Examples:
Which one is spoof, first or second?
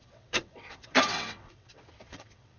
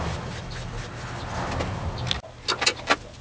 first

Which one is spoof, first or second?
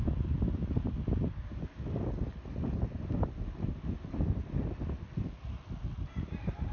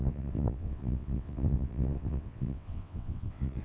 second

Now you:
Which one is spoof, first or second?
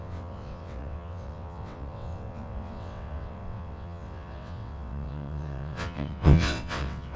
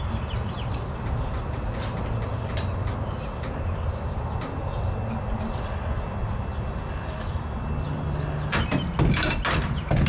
first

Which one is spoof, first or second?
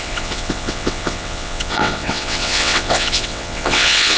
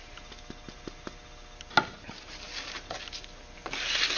first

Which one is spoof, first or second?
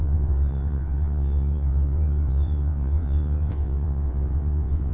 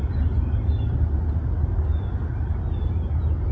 first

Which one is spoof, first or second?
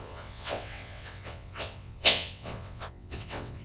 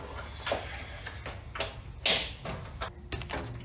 first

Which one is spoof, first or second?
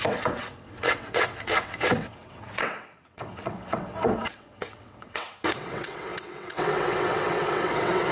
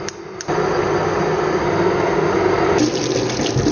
first